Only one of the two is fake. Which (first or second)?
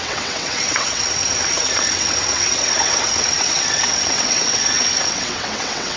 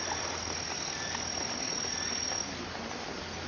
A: first